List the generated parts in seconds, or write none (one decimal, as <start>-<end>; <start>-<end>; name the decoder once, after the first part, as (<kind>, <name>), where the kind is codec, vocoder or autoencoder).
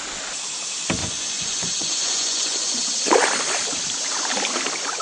1.0-2.8 (vocoder, Vocos)